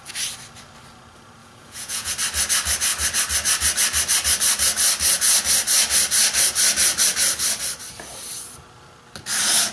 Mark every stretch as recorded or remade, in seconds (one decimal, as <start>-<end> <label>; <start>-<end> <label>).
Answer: 0.0-1.4 recorded; 1.4-2.1 remade; 2.1-9.7 recorded